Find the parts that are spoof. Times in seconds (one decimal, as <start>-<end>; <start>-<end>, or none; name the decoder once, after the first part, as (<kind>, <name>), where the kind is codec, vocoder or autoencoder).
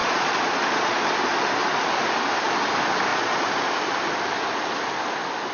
0.0-1.0 (vocoder, Vocos); 3.1-3.7